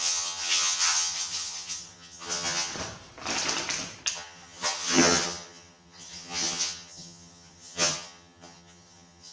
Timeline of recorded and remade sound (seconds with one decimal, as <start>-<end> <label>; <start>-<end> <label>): 0.0-2.7 remade; 2.7-4.1 recorded; 4.1-9.3 remade